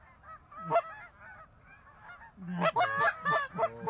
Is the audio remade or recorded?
recorded